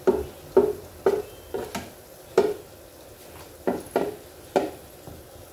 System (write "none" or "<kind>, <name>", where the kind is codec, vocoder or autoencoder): none